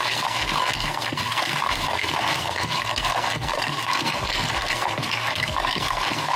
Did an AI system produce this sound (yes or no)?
yes